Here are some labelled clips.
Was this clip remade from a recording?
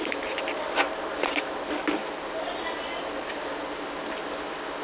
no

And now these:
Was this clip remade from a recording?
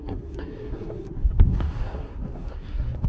yes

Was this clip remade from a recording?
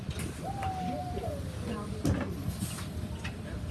no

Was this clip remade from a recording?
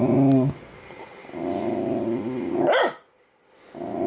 no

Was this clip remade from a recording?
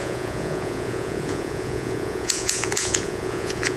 yes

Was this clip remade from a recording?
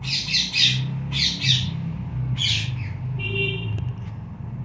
no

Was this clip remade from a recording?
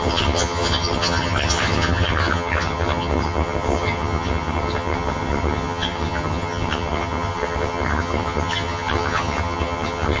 yes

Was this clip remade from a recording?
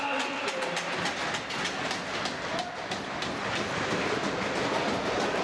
no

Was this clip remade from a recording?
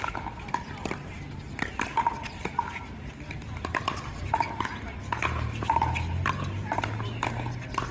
no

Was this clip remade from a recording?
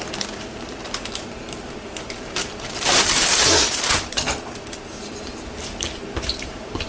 yes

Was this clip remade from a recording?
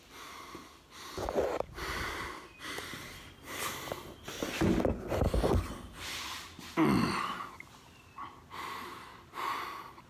no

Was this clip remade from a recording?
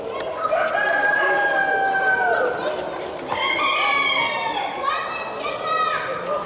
no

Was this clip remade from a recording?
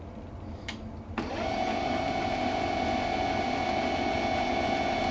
no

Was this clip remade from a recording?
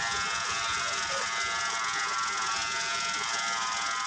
no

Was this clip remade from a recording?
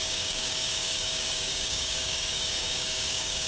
yes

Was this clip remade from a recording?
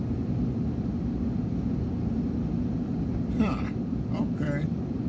no